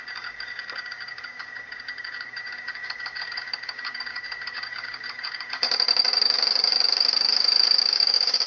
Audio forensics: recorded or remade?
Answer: remade